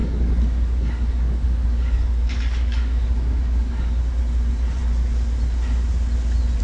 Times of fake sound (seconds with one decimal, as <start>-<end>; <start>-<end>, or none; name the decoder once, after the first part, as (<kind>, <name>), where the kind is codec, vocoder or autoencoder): 0.0-4.0 (codec, DAC)